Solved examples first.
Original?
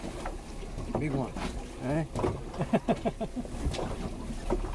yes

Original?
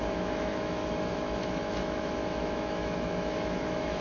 no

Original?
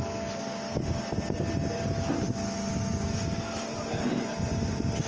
yes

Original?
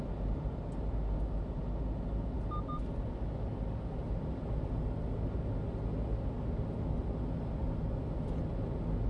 yes